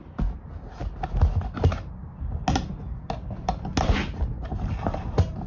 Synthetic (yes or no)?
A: no